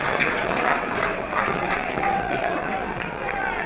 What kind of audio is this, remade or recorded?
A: remade